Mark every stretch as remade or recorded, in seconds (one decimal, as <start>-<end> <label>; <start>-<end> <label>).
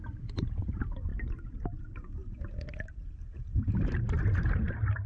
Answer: 0.0-5.1 recorded